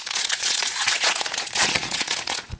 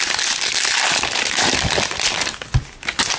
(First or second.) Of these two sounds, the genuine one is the second